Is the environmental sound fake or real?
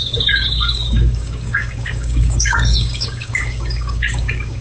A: fake